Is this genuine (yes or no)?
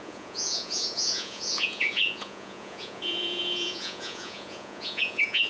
no